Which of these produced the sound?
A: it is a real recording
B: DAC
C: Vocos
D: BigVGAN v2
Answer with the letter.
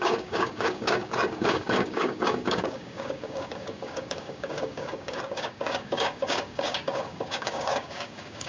B